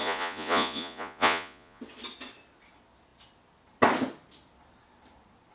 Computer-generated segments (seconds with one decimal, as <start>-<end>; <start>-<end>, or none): 0.0-1.8